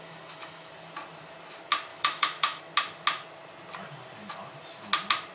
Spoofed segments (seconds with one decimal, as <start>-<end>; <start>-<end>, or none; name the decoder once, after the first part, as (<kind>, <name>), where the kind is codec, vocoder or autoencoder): 0.0-0.7 (autoencoder, DAC-VAE); 1.9-2.6